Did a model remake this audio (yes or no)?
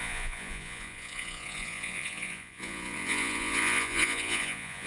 yes